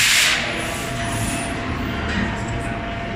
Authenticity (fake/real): real